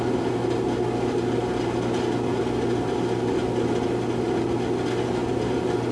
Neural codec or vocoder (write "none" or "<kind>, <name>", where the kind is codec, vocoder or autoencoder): none